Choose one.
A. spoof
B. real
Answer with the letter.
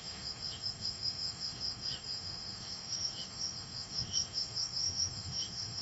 A